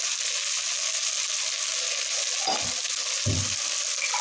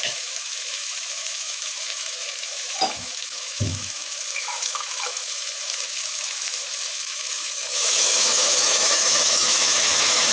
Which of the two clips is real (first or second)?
first